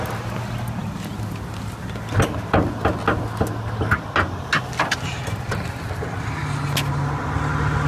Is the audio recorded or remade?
recorded